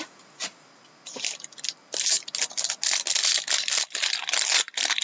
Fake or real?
real